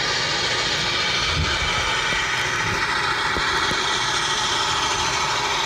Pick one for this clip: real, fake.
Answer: real